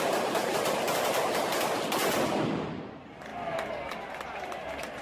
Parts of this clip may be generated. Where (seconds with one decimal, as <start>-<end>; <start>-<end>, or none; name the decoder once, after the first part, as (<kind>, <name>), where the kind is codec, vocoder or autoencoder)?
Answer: none

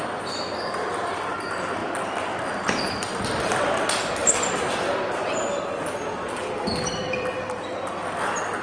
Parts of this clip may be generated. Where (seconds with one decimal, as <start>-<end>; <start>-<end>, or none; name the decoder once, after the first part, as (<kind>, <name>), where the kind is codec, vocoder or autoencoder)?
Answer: none

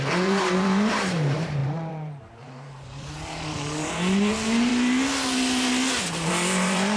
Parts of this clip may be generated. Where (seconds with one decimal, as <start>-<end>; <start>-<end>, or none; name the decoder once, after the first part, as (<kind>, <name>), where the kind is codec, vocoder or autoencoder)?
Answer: 0.0-4.7 (vocoder, BigVGAN v2); 6.0-7.0

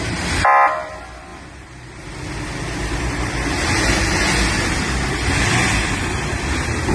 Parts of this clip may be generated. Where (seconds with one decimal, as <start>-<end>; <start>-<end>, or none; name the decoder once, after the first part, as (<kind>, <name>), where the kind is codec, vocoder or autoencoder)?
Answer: none